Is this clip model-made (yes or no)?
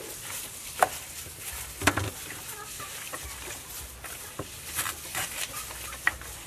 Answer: no